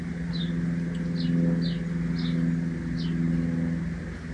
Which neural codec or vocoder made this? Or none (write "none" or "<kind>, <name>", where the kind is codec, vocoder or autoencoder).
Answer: none